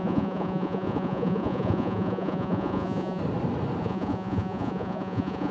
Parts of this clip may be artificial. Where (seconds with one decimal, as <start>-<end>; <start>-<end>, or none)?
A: 0.0-3.2; 3.8-5.5